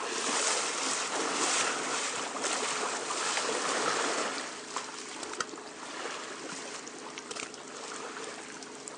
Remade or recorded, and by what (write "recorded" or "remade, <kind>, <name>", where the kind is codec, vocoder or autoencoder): recorded